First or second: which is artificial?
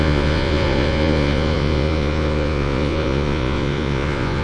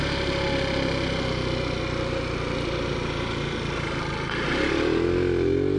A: first